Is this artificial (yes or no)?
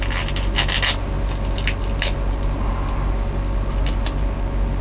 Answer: no